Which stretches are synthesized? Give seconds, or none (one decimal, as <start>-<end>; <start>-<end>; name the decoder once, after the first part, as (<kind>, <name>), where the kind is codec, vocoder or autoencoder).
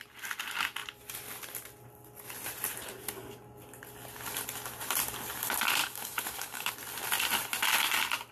5.8-6.7 (codec, DAC)